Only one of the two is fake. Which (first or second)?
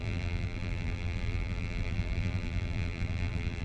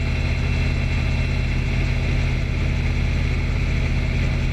first